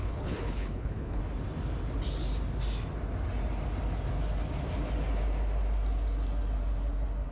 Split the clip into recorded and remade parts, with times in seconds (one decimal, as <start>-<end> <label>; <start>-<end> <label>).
0.0-1.2 remade; 1.2-7.3 recorded